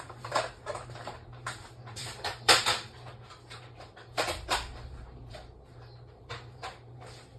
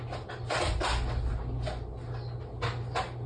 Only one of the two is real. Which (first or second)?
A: second